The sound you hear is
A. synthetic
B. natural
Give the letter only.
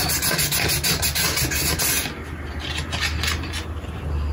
B